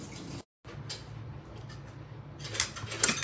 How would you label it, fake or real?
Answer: real